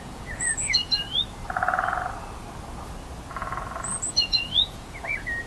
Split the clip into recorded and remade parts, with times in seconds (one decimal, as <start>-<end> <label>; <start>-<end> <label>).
0.0-0.8 remade; 0.8-4.1 recorded; 4.1-5.5 remade